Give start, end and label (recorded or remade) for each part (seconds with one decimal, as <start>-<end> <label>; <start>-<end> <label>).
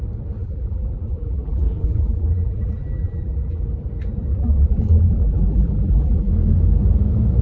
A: 0.0-0.4 recorded; 0.4-3.6 remade; 3.6-4.3 recorded; 4.3-6.3 remade; 6.3-7.4 recorded